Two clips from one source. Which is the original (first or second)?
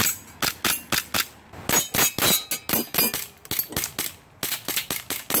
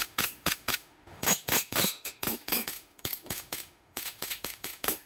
first